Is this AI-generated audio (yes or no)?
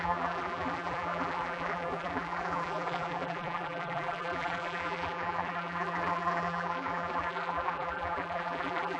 yes